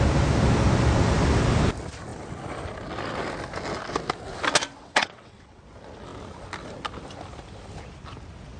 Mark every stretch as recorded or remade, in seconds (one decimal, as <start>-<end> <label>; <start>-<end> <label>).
0.0-4.8 recorded; 4.8-5.6 remade; 5.6-8.6 recorded